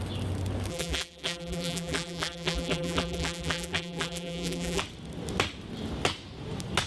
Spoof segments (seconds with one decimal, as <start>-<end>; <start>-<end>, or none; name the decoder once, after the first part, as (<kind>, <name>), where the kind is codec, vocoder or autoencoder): 0.7-4.8 (vocoder, BigVGAN v2)